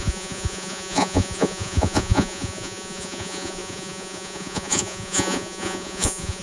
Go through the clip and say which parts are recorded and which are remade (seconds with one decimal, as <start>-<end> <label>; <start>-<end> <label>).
0.0-6.4 remade

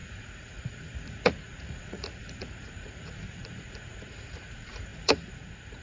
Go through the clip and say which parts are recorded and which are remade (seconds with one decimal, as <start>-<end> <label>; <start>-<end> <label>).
0.0-5.8 remade